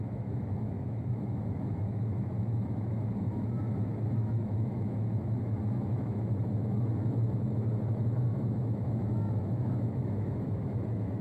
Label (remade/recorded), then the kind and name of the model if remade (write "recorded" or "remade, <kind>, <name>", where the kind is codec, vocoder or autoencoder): remade, autoencoder, DAC-VAE